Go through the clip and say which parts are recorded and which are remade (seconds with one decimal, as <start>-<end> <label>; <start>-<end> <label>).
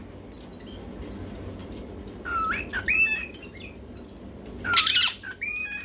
0.0-5.8 recorded